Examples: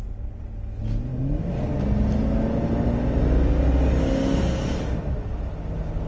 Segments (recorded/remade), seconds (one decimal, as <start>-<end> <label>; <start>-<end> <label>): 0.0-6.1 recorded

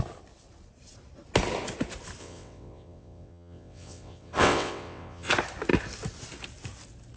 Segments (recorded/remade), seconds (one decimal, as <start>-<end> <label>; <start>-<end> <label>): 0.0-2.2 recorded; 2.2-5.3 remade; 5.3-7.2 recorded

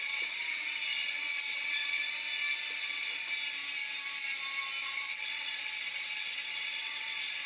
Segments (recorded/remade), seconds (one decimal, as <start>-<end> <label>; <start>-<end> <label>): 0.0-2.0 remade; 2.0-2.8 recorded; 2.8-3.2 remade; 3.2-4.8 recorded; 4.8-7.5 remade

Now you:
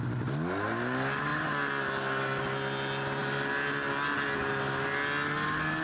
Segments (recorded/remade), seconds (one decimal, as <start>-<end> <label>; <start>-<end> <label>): 0.0-5.8 recorded